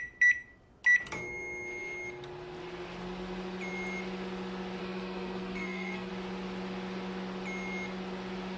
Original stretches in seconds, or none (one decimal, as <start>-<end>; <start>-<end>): 0.0-4.8; 6.1-8.6